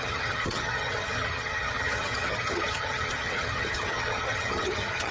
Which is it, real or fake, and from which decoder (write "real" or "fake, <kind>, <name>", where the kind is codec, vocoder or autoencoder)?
fake, vocoder, HiFi-GAN